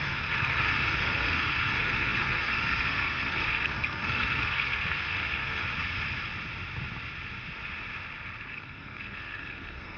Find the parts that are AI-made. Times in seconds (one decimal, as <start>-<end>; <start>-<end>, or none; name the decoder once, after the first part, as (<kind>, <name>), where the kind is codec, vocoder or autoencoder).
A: 0.0-5.6 (codec, SNAC); 8.5-10.0